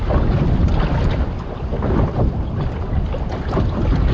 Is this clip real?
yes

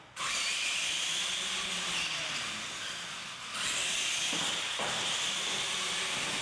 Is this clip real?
yes